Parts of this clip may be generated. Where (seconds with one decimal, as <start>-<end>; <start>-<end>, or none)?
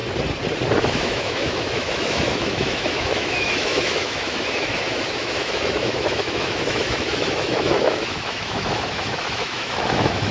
0.9-10.3